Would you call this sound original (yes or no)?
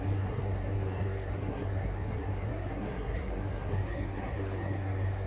no